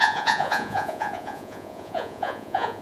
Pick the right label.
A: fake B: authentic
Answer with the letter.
A